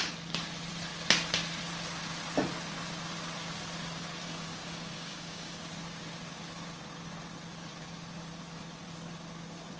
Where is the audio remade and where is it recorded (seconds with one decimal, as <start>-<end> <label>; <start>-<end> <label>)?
0.0-4.2 recorded; 4.2-5.7 remade; 5.7-9.8 recorded